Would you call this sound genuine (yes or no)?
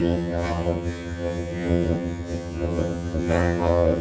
no